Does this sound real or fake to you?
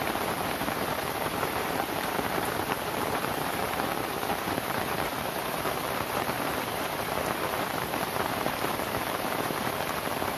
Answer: fake